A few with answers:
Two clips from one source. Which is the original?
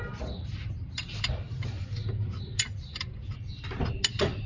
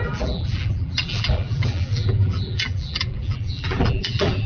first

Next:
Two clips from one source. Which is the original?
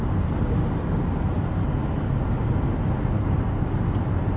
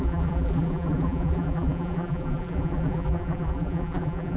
first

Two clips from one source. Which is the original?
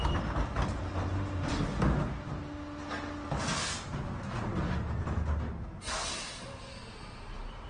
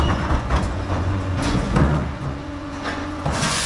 first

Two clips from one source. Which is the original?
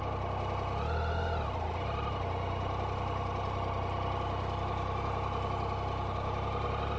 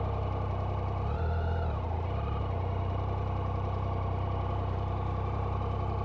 first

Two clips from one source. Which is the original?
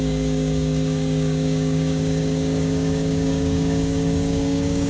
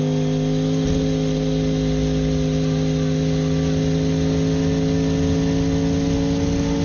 second